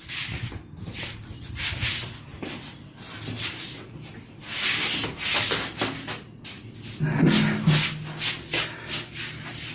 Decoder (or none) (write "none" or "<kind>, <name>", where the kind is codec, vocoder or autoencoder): none